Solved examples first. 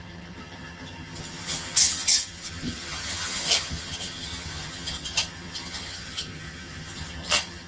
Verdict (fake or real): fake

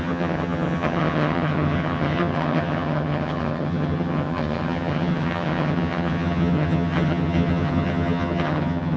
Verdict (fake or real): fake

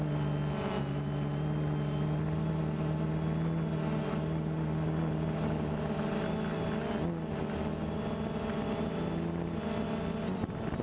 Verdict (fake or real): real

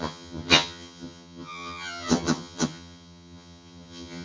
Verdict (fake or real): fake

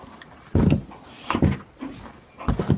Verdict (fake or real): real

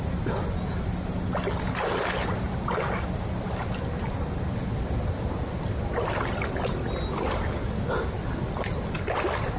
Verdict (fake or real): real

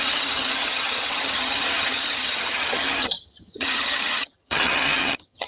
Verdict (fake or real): fake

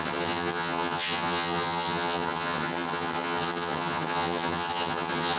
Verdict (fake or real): fake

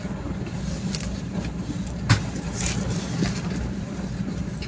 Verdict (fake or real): real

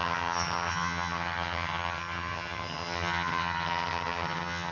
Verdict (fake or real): fake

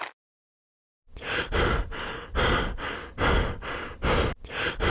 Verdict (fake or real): real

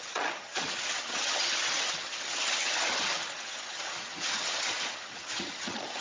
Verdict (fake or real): fake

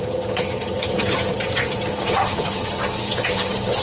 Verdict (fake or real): fake